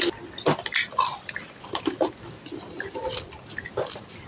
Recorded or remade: recorded